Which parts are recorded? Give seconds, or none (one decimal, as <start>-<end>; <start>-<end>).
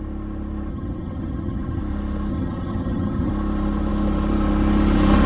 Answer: 0.0-0.7; 1.8-2.3; 3.3-5.3